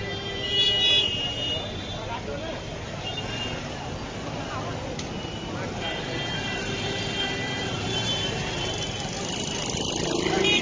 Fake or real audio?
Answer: real